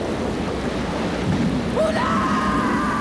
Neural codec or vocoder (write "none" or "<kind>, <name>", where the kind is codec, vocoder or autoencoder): none